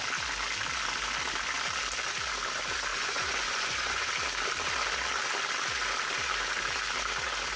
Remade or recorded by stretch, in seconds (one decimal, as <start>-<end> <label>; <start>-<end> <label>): 0.0-2.9 recorded; 2.9-4.1 remade; 4.1-7.6 recorded